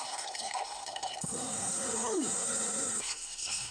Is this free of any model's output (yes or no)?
no